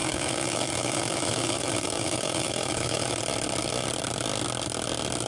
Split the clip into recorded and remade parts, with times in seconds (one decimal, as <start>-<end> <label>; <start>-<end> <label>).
0.0-3.2 remade; 3.2-5.3 recorded